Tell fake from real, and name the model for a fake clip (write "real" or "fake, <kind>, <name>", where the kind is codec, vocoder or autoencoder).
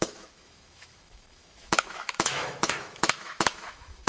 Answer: fake, autoencoder, DAC-VAE